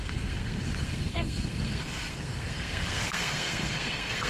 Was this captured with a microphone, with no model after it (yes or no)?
no